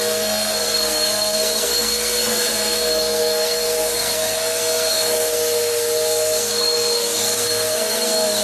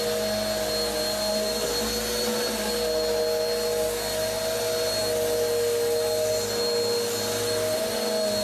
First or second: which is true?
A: second